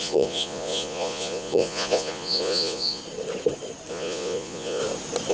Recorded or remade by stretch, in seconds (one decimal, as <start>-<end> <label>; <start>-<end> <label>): 0.0-3.0 remade; 3.0-3.9 recorded; 3.9-4.8 remade; 4.8-5.3 recorded